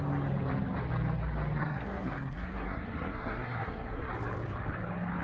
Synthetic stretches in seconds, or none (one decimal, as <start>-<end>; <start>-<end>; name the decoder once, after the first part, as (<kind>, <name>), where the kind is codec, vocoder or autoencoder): 1.6-4.1 (codec, SNAC)

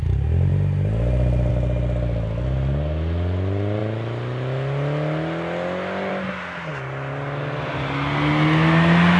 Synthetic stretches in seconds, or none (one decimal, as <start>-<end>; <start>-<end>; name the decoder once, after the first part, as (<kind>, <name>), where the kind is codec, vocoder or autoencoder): none

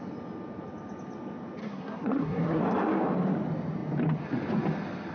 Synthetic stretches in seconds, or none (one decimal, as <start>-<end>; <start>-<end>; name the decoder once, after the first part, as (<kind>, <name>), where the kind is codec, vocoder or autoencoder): 1.6-2.6 (codec, SNAC)

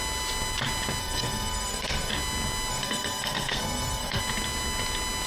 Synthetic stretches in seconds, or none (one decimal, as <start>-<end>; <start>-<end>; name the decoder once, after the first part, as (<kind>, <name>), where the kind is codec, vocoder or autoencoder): 1.0-2.1 (codec, SNAC); 2.7-4.2

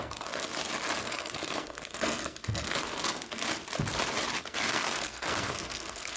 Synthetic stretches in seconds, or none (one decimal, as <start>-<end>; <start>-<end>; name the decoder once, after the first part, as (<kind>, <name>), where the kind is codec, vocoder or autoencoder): 0.0-0.5 (codec, SNAC); 1.0-3.4; 4.4-6.2